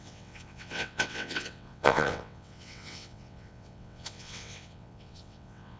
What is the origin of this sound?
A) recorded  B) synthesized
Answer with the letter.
B